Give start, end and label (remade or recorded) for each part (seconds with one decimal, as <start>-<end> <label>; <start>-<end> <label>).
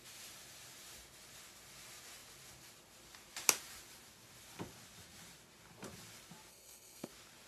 0.0-6.5 recorded; 6.5-7.1 remade; 7.1-7.5 recorded